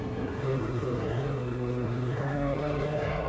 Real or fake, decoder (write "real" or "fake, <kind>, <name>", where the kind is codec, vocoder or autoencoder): fake, codec, SNAC